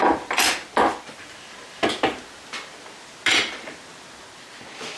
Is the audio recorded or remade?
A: recorded